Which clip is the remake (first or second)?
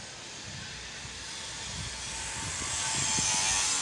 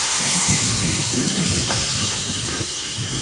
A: second